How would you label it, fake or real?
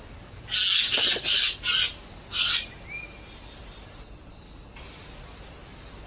real